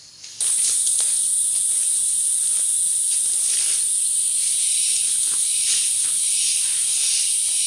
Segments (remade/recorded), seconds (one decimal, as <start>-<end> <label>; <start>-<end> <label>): 0.0-7.7 recorded